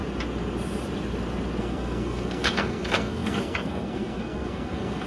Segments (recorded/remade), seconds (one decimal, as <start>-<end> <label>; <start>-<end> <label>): 0.0-1.6 recorded; 1.6-5.1 remade

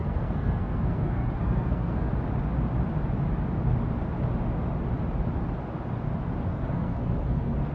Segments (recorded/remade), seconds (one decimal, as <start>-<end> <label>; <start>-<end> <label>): 0.0-2.1 remade; 2.1-6.5 recorded; 6.5-7.7 remade

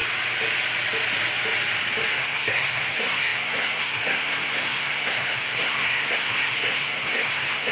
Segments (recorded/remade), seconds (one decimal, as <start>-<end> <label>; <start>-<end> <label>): 0.0-2.1 recorded; 2.1-7.7 remade

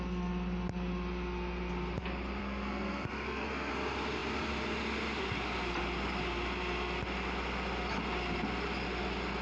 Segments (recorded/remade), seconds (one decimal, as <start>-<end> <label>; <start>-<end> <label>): 0.0-2.4 recorded; 2.4-3.7 remade; 3.7-9.4 recorded

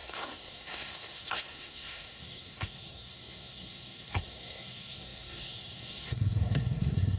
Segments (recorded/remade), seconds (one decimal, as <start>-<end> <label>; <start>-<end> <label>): 0.0-7.2 remade